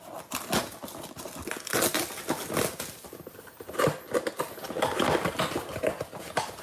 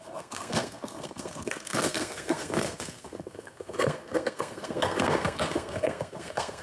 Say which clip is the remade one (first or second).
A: second